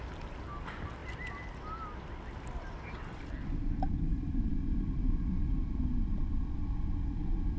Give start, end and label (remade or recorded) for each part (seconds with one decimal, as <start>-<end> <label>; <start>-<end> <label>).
0.0-7.6 recorded